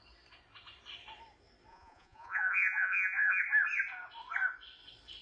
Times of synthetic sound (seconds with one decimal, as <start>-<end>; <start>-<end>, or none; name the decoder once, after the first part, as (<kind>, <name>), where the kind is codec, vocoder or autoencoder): 1.7-3.4 (vocoder, Vocos)